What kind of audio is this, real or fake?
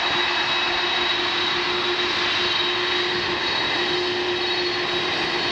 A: real